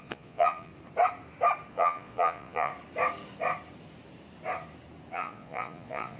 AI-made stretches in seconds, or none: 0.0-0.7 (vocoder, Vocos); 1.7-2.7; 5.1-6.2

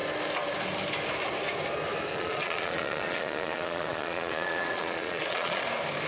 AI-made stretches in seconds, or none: 2.1-5.6 (vocoder, Vocos)

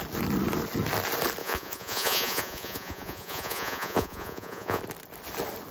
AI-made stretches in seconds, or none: 1.4-4.8 (vocoder, Vocos)

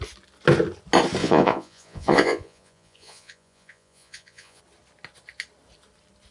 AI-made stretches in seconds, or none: 1.2-4.6 (vocoder, Vocos)

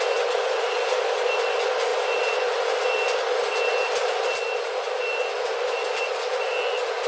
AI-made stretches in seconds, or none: none